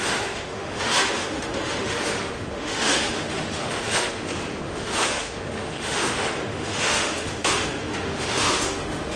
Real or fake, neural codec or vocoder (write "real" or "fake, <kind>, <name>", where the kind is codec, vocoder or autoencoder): fake, autoencoder, DAC-VAE